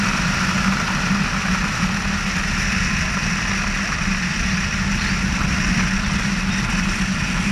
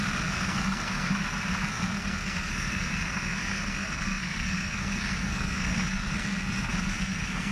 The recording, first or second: first